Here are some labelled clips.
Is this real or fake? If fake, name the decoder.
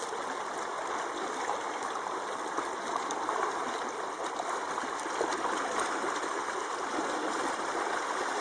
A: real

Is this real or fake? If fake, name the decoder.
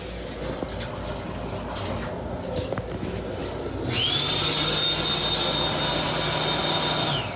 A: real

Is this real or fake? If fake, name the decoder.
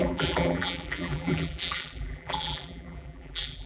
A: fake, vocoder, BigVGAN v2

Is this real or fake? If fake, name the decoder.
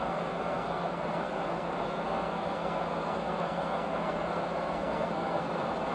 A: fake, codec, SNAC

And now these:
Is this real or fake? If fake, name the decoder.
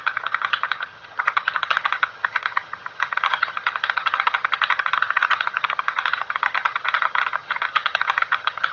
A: fake, vocoder, HiFi-GAN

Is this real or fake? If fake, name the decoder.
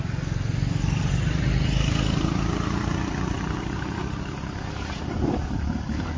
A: fake, vocoder, BigVGAN v2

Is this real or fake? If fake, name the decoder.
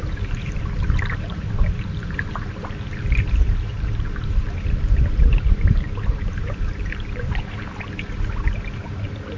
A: fake, vocoder, BigVGAN v2